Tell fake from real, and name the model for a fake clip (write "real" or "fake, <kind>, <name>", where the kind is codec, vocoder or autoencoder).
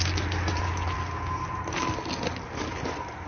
real